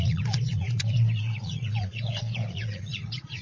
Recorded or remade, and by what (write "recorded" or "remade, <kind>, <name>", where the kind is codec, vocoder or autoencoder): remade, vocoder, Vocos